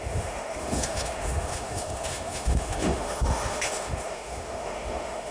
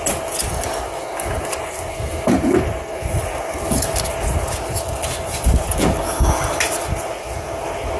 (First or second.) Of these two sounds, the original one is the second